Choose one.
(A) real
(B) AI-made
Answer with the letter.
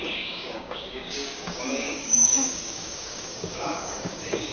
B